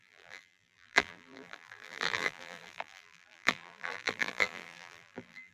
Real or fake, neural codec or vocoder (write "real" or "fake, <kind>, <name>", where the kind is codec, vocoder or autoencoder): fake, vocoder, BigVGAN v2